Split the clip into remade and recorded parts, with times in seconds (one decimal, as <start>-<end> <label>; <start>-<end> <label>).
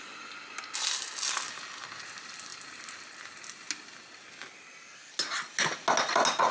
0.0-6.5 recorded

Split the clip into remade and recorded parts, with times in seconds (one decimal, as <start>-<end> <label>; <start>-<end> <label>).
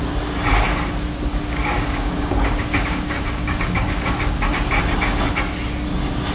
0.0-1.3 recorded; 1.3-4.8 remade; 4.8-6.3 recorded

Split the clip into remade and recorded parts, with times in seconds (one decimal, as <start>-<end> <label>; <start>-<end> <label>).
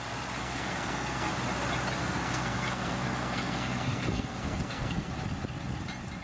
0.0-0.4 recorded; 0.4-1.3 remade; 1.3-2.0 recorded; 2.0-5.1 remade; 5.1-6.2 recorded